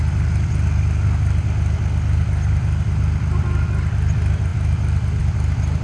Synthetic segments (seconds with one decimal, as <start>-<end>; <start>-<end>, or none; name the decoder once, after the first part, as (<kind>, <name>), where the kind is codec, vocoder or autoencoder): none